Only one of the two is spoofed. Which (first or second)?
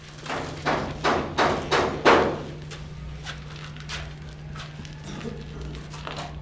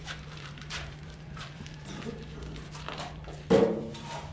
second